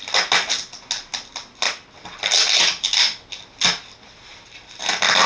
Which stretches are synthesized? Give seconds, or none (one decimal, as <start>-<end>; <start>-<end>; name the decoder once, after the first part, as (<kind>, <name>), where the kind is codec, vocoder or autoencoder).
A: none